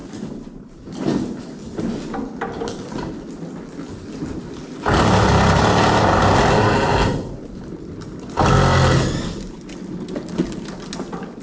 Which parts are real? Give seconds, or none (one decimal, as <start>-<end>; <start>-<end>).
0.0-11.4